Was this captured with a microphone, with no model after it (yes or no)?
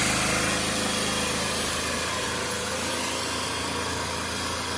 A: yes